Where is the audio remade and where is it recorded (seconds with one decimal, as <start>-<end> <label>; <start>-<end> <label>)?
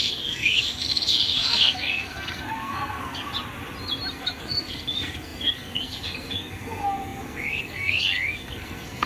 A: 0.0-3.3 remade; 3.3-4.1 recorded; 4.1-9.1 remade